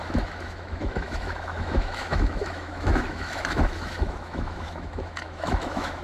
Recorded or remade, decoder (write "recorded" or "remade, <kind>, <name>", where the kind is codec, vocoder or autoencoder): remade, autoencoder, DAC-VAE